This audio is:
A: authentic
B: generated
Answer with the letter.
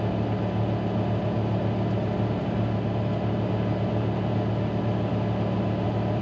A